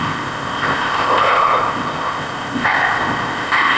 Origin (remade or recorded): remade